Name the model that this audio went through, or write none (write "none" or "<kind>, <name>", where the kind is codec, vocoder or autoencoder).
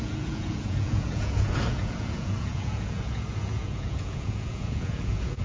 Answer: vocoder, Vocos